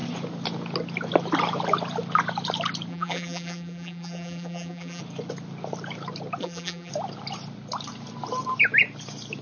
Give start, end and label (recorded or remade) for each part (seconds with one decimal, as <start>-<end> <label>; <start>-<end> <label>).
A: 0.0-2.9 recorded; 2.9-5.0 remade; 5.0-6.4 recorded; 6.4-6.9 remade; 6.9-9.4 recorded